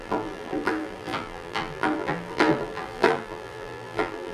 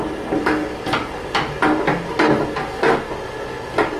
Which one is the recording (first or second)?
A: second